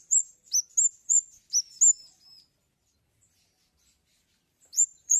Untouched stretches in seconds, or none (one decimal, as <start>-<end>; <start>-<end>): 0.4-1.0; 1.4-4.5